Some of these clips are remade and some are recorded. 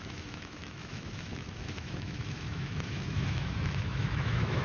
remade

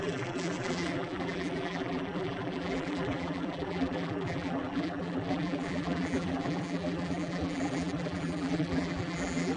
remade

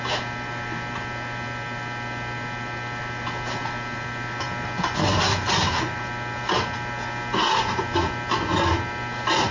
recorded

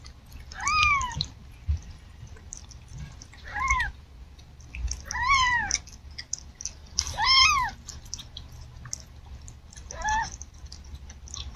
recorded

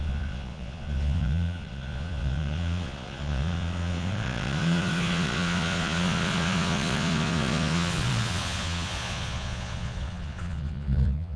remade